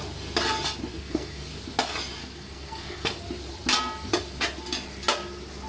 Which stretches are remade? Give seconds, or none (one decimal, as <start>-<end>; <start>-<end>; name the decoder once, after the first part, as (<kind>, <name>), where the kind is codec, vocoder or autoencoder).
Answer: 0.9-1.5 (codec, SNAC); 2.2-3.2